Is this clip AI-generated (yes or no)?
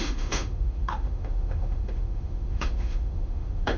yes